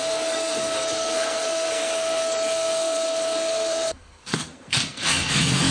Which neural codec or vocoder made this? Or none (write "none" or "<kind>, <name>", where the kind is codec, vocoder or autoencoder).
codec, SNAC